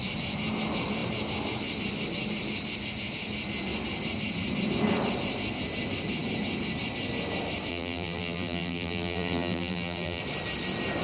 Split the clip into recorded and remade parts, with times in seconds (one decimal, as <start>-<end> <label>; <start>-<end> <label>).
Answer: 0.0-7.7 recorded; 7.7-10.2 remade; 10.2-11.0 recorded